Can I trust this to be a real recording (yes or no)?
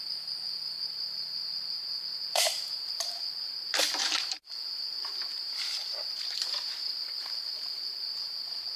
no